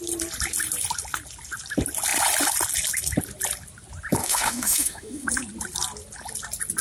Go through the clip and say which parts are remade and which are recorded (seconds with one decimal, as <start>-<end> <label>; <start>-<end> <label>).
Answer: 0.0-4.2 recorded; 4.2-5.3 remade; 5.3-6.8 recorded